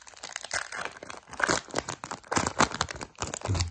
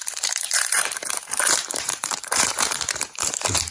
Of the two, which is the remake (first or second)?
second